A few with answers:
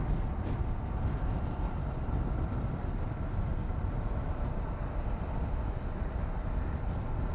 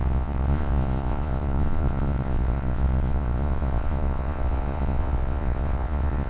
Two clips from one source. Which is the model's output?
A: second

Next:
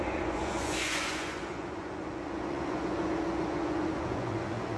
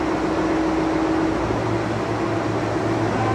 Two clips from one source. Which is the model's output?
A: first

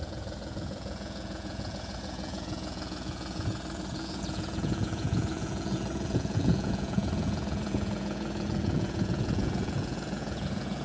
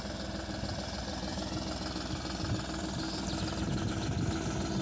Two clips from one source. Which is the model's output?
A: first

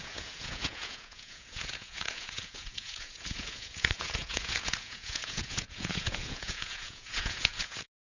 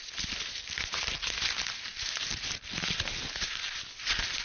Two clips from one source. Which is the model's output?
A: first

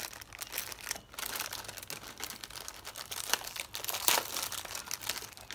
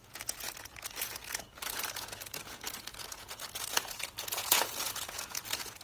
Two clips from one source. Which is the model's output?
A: second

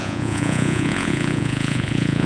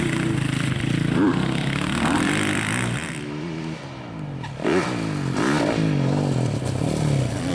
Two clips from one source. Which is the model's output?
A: first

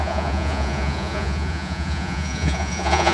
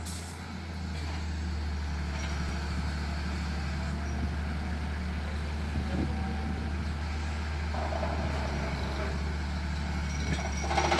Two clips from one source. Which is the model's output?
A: first